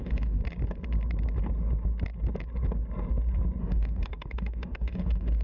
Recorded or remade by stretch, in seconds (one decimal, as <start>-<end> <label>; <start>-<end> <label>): 0.0-0.4 remade; 0.4-3.6 recorded; 3.6-5.4 remade